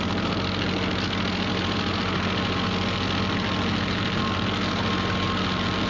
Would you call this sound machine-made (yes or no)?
no